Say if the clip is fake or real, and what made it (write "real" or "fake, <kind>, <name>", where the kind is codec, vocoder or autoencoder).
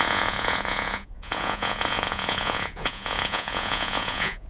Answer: fake, vocoder, Vocos